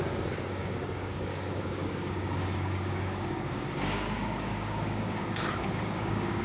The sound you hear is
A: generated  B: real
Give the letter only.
A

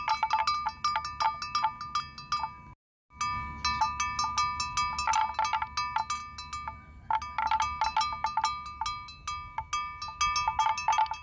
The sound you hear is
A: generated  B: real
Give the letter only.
B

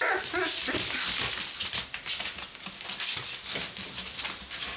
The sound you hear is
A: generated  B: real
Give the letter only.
B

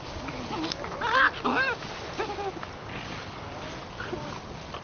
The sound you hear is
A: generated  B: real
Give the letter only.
B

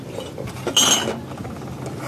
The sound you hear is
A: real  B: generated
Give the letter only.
A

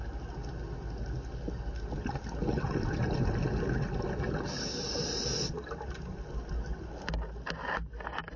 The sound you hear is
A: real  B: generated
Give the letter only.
A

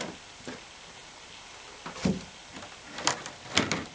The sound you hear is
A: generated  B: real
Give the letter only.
B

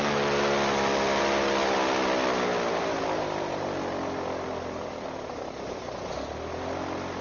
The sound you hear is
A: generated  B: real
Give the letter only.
B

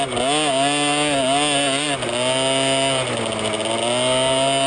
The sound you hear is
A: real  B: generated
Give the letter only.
A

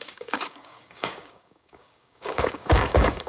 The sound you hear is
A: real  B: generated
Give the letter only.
B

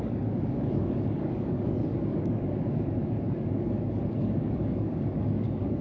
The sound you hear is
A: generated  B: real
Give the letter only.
A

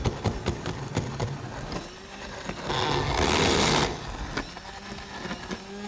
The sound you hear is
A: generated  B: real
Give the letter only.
B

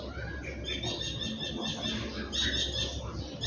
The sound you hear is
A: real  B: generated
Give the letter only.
A